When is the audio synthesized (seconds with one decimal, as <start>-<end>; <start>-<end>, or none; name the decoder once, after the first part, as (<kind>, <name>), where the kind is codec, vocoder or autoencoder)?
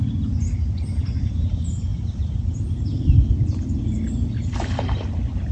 none